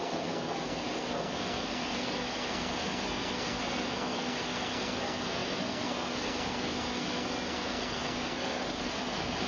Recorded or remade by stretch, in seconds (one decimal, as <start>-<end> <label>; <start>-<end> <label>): 0.0-9.5 remade

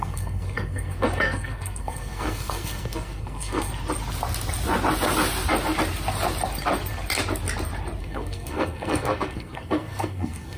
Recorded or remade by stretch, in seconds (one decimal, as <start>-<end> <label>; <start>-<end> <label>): 0.0-3.7 remade; 3.7-8.0 recorded; 8.0-10.6 remade

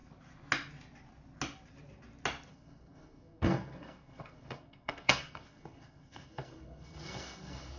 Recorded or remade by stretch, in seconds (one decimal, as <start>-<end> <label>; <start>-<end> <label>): 0.0-2.5 recorded; 2.5-7.8 remade

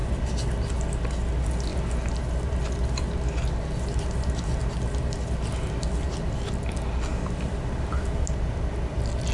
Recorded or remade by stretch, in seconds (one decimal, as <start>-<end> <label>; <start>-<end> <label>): 0.0-9.3 recorded

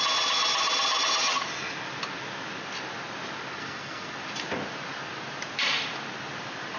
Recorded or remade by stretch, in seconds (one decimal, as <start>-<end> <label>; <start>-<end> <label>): 0.0-3.6 recorded; 3.6-4.1 remade; 4.1-6.8 recorded

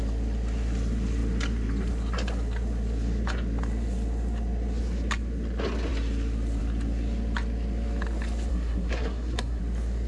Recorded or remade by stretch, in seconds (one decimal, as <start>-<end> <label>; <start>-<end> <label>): 0.0-8.5 recorded; 8.5-9.6 remade; 9.6-10.1 recorded